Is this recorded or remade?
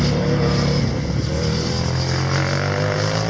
recorded